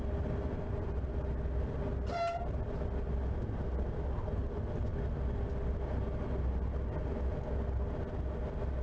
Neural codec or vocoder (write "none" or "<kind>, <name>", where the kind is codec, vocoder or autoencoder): none